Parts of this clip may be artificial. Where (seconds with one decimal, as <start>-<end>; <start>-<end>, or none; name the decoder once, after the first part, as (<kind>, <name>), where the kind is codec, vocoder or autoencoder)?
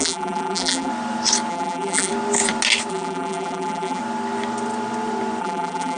0.0-0.9 (vocoder, BigVGAN v2); 1.5-2.1; 2.9-4.0; 5.4-6.0